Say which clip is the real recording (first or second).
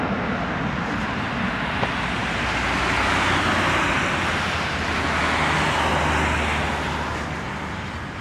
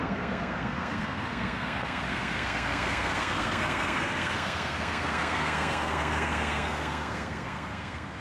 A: first